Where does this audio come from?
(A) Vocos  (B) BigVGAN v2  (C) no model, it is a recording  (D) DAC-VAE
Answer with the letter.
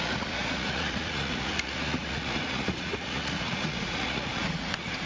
A